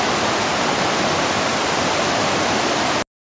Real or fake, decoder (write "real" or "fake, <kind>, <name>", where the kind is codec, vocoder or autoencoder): real